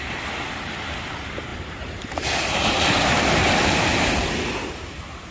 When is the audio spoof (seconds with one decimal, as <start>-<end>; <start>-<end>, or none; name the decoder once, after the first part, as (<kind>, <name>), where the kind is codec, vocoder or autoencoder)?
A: 1.5-4.4 (vocoder, BigVGAN v2)